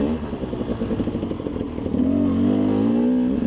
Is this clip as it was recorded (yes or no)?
yes